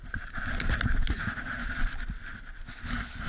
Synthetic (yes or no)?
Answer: no